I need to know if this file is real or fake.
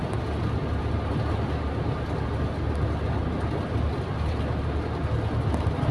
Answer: real